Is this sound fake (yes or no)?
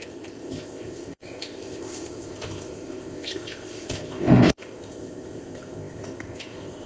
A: yes